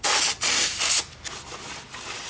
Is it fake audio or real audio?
real